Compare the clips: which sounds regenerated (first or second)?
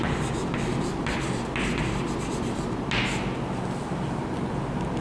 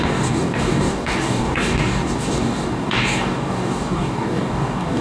second